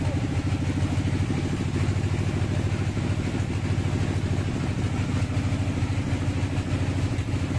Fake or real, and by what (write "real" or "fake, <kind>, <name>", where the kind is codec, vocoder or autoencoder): real